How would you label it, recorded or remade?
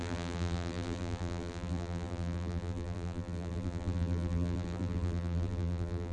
remade